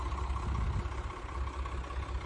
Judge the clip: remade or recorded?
recorded